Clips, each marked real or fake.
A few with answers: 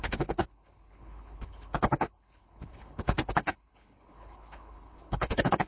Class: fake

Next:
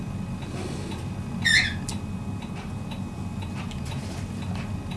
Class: real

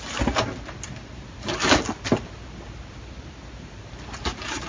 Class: real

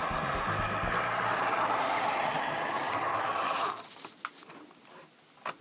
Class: real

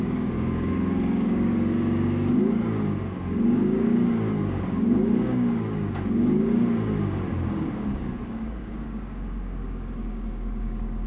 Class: fake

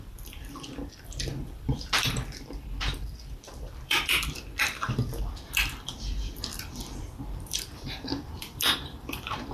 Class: fake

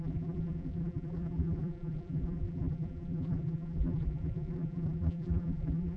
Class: fake